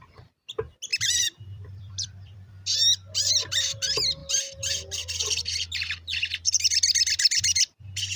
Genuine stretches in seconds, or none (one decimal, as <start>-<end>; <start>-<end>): 0.0-0.9; 2.5-8.2